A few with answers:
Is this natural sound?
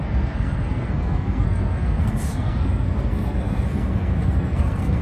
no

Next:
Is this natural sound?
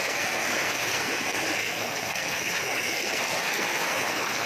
no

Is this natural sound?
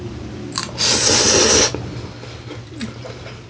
yes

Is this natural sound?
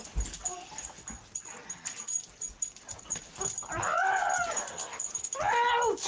yes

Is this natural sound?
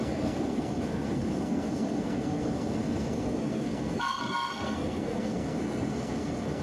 no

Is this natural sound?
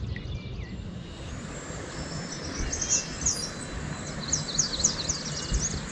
yes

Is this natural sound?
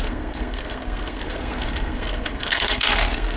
no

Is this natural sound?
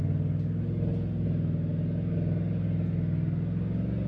yes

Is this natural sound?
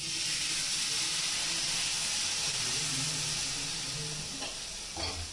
yes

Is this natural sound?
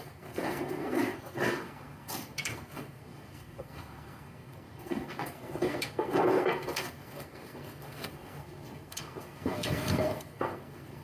no